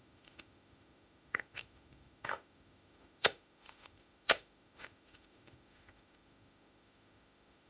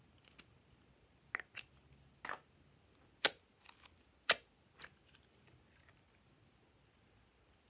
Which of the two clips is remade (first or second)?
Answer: first